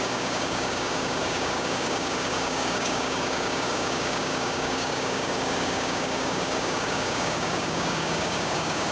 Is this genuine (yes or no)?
no